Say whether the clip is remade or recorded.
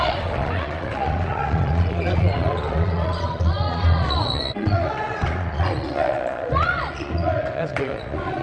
remade